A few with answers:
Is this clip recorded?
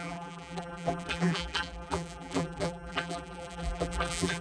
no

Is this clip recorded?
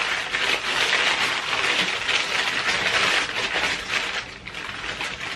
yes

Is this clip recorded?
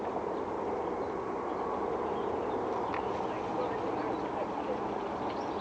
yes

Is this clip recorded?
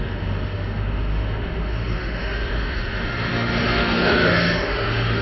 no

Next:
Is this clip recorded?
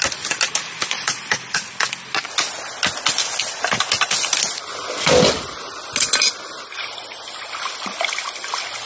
yes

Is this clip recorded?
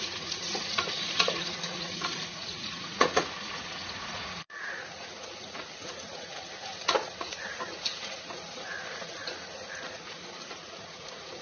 no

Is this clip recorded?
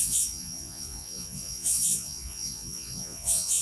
no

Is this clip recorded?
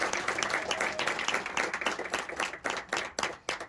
yes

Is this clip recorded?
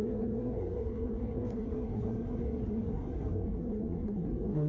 no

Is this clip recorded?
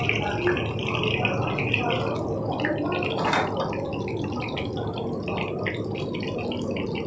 yes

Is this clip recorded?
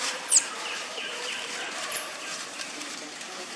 no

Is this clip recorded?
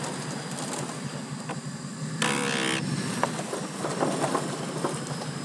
yes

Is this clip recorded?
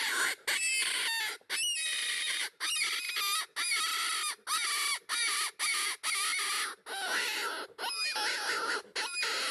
yes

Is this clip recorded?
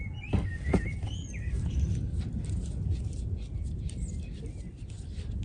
yes